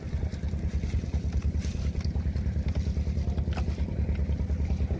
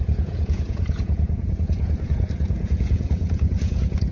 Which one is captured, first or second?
first